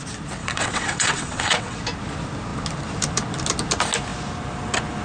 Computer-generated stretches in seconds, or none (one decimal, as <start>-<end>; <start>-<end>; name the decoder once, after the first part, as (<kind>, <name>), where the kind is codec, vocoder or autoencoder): 0.4-1.8 (vocoder, WaveNeXt)

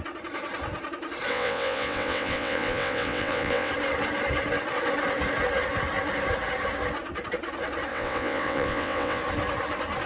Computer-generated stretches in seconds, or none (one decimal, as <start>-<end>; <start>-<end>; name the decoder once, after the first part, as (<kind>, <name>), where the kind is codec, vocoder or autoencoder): 1.3-3.7 (vocoder, WaveNeXt); 7.9-9.2

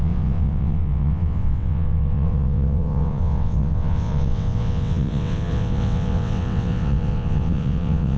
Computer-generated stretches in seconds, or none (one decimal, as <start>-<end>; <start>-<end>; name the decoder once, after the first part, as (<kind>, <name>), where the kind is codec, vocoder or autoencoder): 0.0-8.2 (vocoder, WaveNeXt)

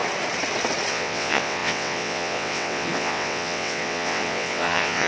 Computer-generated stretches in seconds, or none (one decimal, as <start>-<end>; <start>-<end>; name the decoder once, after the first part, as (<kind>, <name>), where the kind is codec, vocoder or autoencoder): 0.9-5.1 (vocoder, WaveNeXt)

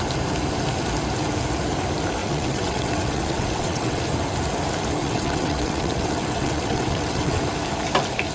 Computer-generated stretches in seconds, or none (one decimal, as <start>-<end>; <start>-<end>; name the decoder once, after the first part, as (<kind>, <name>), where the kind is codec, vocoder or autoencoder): 2.2-4.0 (vocoder, WaveNeXt); 5.0-7.4